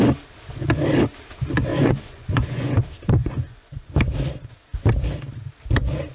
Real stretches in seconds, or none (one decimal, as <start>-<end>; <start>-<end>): 0.0-1.7; 2.7-3.2; 3.9-6.1